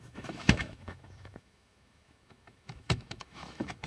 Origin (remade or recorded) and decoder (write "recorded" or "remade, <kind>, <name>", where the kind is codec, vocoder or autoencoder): remade, autoencoder, DAC-VAE